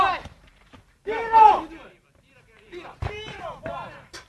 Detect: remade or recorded remade